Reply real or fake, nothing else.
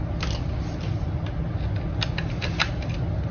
real